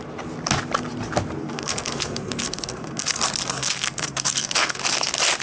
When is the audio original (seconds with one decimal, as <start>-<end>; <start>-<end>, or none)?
0.0-1.4; 3.2-3.6; 4.8-5.4